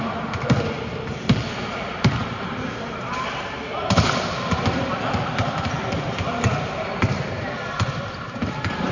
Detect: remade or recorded remade